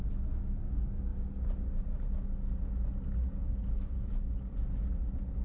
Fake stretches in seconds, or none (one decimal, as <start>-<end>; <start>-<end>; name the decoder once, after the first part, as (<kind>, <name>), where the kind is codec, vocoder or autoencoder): none